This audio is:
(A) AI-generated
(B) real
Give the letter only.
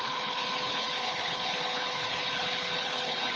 A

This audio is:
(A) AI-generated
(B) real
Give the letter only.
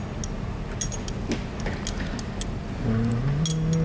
B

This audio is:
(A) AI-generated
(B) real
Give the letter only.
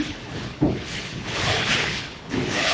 A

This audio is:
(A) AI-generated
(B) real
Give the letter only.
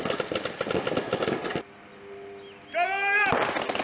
B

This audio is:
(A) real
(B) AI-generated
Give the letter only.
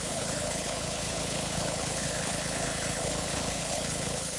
B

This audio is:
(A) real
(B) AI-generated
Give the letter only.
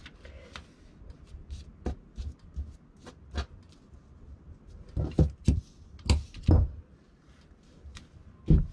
A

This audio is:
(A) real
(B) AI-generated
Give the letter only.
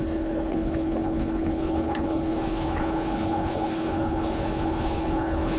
B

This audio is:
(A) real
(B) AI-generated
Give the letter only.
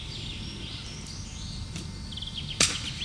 A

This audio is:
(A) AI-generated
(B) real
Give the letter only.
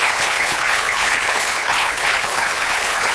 A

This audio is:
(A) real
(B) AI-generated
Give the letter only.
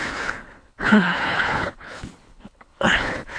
B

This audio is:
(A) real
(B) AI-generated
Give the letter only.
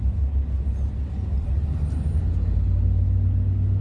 A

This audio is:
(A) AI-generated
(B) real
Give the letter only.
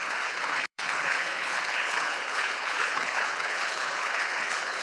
A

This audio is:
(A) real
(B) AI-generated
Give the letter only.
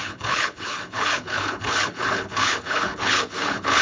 B